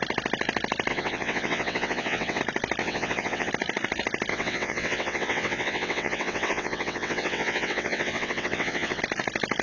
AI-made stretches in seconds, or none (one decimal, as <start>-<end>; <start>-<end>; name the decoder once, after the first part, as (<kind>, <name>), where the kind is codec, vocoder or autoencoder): 0.9-2.4 (vocoder, WaveNeXt); 2.8-3.5; 4.3-9.0